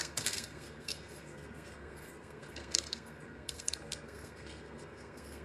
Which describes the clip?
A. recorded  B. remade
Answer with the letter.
B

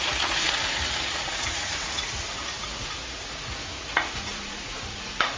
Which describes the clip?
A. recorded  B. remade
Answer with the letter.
B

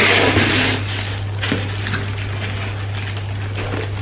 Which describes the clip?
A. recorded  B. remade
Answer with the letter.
A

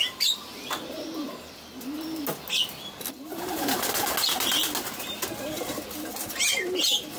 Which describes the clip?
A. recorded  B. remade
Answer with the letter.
A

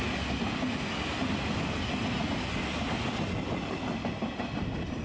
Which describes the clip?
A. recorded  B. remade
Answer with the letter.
A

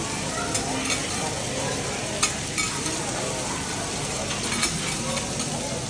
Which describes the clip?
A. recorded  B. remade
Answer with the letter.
A